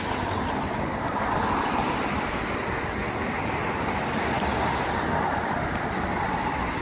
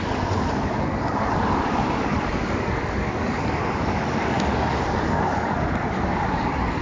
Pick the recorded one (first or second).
first